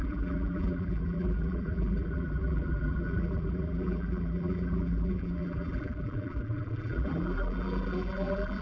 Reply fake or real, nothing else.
fake